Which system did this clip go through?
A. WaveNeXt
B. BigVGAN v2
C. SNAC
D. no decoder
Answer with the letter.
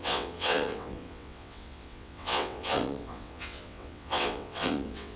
A